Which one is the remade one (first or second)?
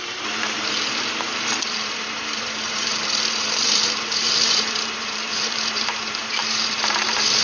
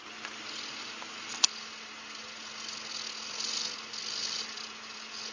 first